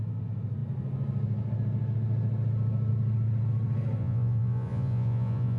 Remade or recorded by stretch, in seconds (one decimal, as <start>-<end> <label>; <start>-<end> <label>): 0.0-4.0 recorded; 4.0-5.6 remade